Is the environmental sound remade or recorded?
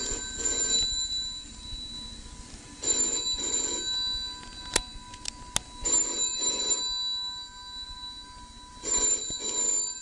recorded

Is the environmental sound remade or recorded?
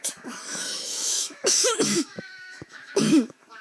remade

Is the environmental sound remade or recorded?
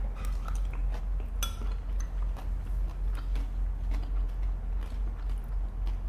recorded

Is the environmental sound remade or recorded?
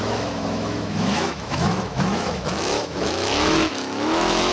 remade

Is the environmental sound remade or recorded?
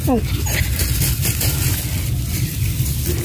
recorded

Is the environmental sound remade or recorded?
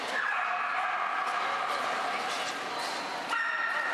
recorded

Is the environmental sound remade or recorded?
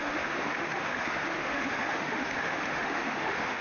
remade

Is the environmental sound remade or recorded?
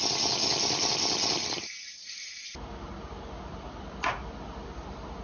recorded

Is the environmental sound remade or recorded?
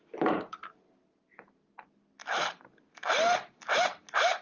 recorded